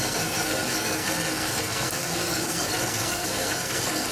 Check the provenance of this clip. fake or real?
fake